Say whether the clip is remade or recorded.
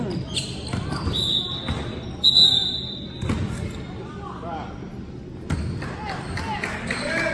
recorded